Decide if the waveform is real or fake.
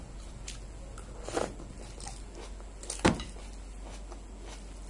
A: real